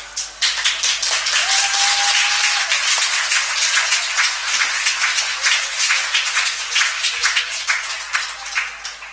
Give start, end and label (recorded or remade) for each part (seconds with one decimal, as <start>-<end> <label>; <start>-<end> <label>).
0.0-3.6 recorded; 3.6-8.0 remade; 8.0-9.1 recorded